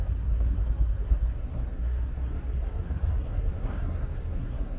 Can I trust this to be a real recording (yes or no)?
no